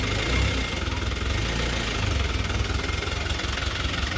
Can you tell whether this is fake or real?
real